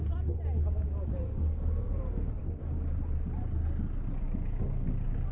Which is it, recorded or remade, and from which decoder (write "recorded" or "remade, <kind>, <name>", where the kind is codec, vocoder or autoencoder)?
recorded